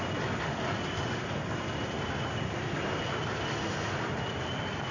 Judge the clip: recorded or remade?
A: recorded